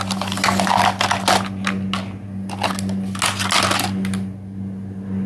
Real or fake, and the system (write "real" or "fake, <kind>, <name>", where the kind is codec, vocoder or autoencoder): real